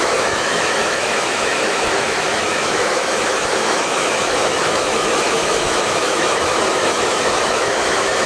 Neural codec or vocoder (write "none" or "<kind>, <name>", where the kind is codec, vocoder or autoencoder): autoencoder, DAC-VAE